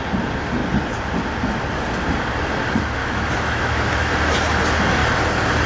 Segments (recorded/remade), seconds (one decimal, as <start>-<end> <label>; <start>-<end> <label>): 0.0-3.0 recorded; 3.0-4.1 remade; 4.1-5.7 recorded